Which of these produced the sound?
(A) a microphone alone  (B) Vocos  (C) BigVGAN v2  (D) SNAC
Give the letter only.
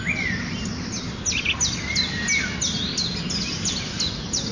A